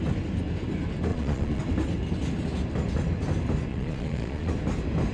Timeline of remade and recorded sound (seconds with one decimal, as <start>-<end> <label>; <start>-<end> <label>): 0.0-1.1 recorded; 1.1-1.6 remade; 1.6-3.7 recorded; 3.7-4.5 remade; 4.5-5.1 recorded